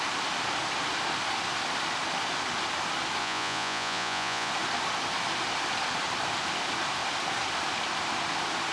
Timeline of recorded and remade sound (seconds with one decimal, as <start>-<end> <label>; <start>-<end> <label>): 0.0-3.2 recorded; 3.2-4.5 remade; 4.5-8.7 recorded